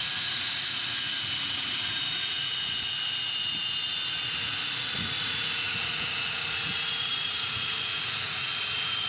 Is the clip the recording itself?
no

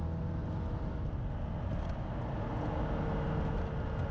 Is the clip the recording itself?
yes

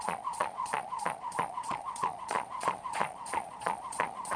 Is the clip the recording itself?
no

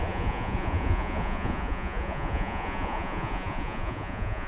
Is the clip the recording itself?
no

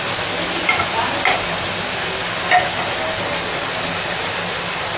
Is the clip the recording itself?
yes